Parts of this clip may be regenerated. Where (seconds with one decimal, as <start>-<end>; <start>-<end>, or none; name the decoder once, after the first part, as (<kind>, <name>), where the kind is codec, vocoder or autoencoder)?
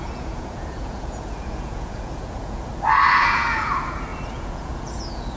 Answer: 0.0-2.7 (vocoder, Vocos); 3.2-5.4